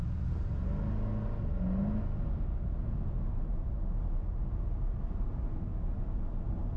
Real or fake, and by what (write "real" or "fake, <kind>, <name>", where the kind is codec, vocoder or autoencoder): real